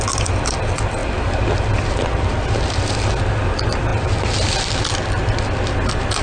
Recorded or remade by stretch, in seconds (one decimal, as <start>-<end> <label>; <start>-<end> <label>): 0.0-6.2 recorded